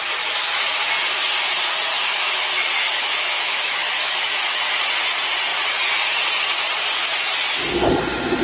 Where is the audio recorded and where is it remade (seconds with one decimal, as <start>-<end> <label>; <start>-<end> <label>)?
0.0-1.9 recorded; 1.9-4.6 remade; 4.6-8.4 recorded